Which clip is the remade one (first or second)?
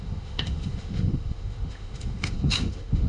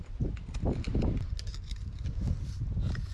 first